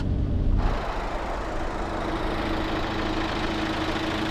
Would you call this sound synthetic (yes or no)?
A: no